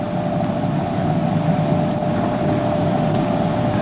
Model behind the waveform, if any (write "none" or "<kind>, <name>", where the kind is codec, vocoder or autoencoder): none